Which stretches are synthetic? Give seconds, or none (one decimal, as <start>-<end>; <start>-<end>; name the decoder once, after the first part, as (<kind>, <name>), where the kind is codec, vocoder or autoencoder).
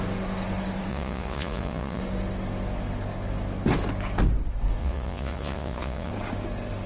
0.9-2.0 (vocoder, Vocos); 4.8-6.1